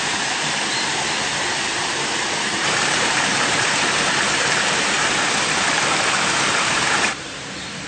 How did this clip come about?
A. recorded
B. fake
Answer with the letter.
B